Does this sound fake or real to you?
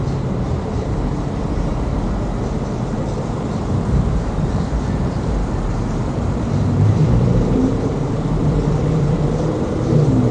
fake